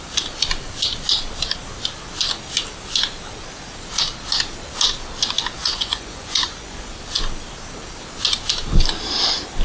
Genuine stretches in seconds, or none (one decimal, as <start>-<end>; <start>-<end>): 0.0-5.6; 6.9-9.6

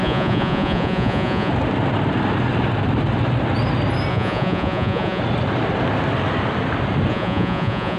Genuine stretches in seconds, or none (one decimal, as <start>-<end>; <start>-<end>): 1.5-4.1; 5.2-7.1

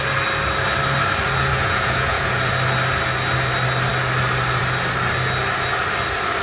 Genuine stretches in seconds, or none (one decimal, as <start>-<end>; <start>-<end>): 0.0-1.5; 2.5-6.4

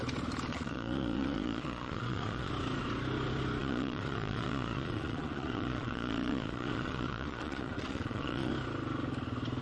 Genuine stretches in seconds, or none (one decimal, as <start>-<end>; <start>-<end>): 0.0-0.5; 2.5-3.6; 8.5-9.6

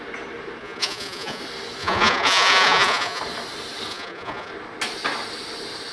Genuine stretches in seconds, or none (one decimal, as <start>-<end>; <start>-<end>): 0.0-0.6; 1.4-1.8; 3.2-3.9; 4.5-5.9

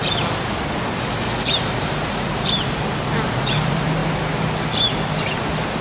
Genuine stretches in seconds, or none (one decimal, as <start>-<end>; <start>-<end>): 0.0-5.8

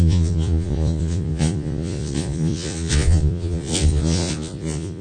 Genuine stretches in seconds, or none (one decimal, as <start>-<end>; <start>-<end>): none